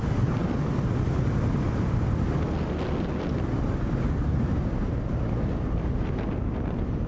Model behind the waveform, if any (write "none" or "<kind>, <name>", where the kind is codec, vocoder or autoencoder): none